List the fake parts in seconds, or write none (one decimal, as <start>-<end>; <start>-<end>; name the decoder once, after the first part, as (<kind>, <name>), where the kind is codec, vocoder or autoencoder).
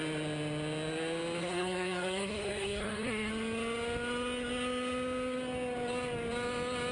1.4-3.3 (codec, SNAC)